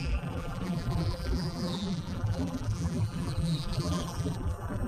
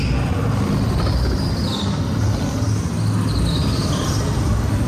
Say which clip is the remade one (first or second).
first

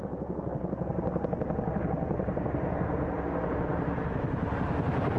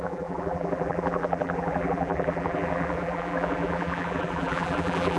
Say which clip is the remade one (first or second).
second